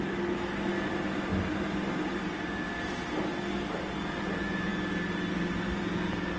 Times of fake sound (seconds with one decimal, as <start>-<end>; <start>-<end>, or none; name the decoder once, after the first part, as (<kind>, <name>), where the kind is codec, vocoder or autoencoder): none